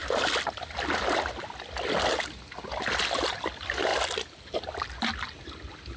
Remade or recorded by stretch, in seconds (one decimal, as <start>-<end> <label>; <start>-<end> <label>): 0.0-6.0 recorded